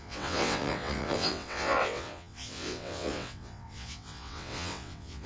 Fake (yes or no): yes